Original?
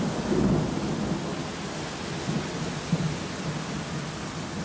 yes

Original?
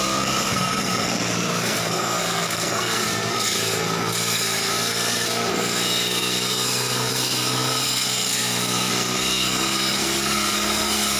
no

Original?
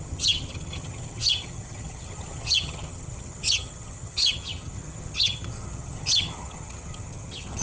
no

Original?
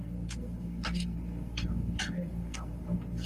no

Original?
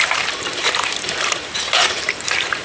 no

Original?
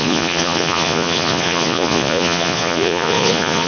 no